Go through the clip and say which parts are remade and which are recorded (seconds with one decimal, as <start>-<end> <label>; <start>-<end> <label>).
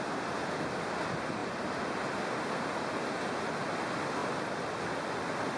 0.0-5.6 recorded